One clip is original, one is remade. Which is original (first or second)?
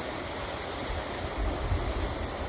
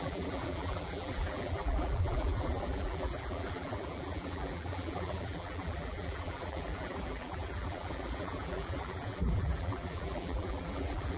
first